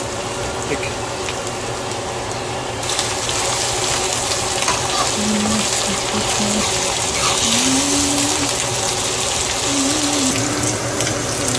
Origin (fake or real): real